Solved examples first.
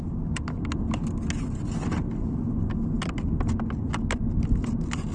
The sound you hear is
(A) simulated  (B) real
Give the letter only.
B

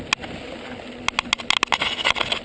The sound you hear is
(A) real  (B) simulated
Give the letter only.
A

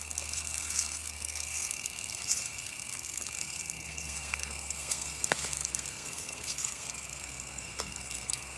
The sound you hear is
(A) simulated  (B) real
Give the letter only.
A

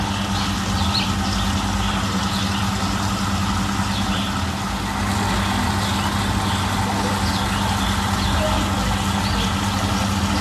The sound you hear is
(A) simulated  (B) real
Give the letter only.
B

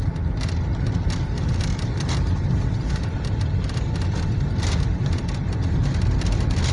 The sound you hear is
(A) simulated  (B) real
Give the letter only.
B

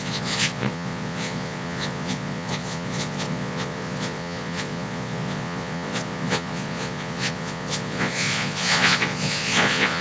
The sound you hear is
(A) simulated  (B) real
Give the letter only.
A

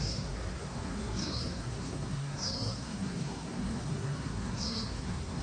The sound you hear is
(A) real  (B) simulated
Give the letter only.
B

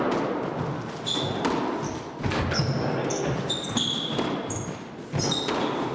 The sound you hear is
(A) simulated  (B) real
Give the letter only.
B